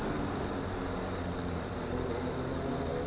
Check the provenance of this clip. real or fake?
real